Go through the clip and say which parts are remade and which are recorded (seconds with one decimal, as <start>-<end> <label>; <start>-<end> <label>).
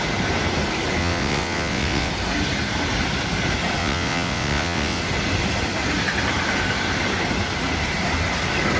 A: 0.0-1.0 recorded; 1.0-2.1 remade; 2.1-3.8 recorded; 3.8-5.0 remade; 5.0-8.8 recorded